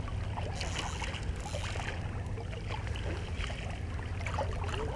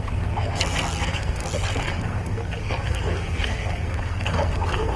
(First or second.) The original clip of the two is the first